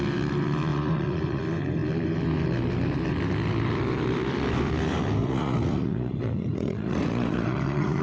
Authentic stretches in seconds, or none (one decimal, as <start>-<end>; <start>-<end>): 0.0-0.7; 1.4-5.2

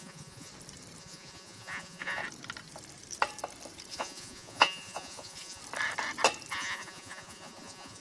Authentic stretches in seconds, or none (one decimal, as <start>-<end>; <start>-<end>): 0.5-1.0; 2.2-3.9; 5.6-6.5

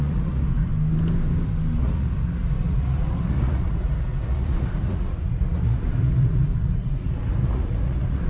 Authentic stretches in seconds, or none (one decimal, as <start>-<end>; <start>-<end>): 0.7-1.8

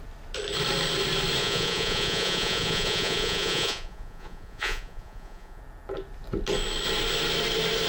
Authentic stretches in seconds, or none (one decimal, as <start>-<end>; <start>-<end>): 0.0-1.4; 5.6-7.9

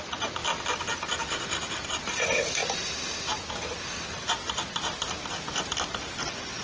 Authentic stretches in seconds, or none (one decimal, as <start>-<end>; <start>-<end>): 0.4-1.9; 2.6-6.6

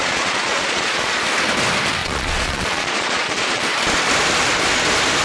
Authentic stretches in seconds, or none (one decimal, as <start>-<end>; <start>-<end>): 1.2-2.0; 3.6-5.2